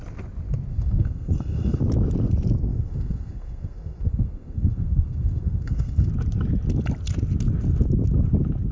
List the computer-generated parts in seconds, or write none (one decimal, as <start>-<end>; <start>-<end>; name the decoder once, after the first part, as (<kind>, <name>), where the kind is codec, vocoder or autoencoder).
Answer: 0.7-1.8 (codec, SNAC); 2.7-6.1